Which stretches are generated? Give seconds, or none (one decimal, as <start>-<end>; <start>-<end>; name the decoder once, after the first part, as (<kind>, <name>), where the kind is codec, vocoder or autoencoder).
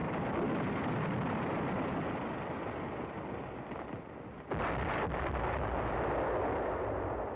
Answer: none